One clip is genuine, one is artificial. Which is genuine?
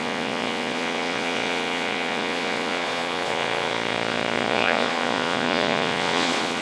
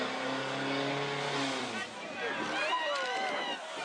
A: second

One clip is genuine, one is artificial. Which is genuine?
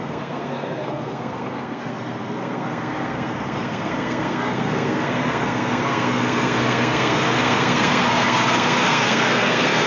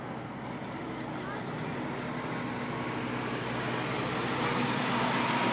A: second